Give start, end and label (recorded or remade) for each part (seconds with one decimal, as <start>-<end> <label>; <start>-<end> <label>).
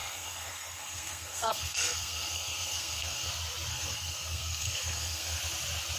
0.0-3.3 remade; 3.3-3.7 recorded; 3.7-5.4 remade; 5.4-6.0 recorded